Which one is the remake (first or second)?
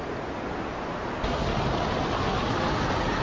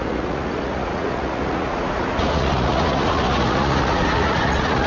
second